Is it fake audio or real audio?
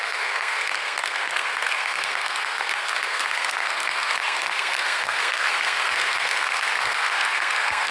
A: fake